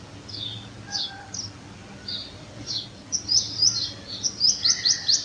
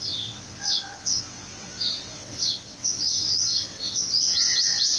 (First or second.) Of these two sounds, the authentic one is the first